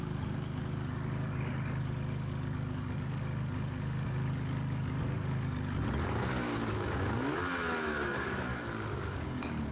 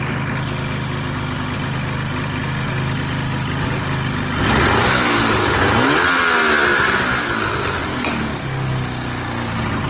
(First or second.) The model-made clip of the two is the first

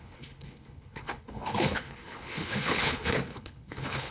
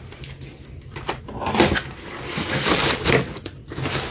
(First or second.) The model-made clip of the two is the first